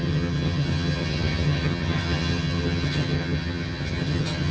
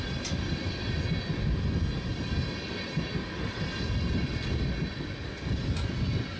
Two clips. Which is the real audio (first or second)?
second